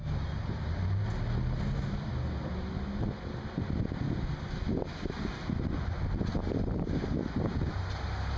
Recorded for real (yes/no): yes